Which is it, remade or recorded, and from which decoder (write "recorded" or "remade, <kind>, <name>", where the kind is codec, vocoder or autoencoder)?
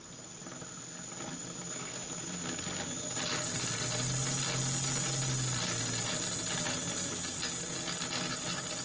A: recorded